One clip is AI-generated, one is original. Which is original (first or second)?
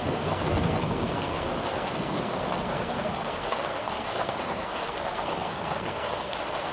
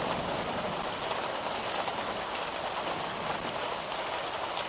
second